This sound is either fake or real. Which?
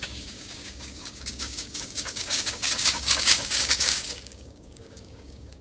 fake